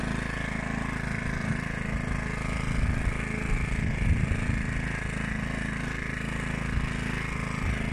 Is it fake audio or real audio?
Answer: real